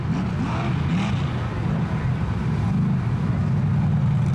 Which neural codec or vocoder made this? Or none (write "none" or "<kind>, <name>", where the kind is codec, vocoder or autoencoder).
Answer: none